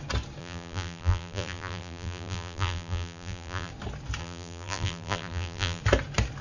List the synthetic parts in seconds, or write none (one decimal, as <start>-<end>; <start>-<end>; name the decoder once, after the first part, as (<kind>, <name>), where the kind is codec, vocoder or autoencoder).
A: 0.4-3.7 (vocoder, BigVGAN v2); 4.2-5.8